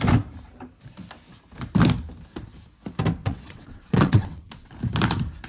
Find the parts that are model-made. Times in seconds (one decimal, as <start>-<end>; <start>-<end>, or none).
3.2-4.7